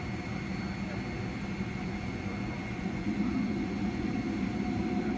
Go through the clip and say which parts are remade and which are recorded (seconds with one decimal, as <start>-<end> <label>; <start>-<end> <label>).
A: 0.0-1.7 recorded; 1.7-4.1 remade; 4.1-5.2 recorded